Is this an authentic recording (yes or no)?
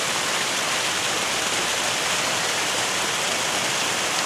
no